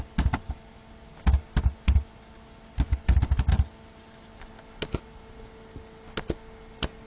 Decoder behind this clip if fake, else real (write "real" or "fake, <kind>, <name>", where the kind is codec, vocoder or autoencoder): real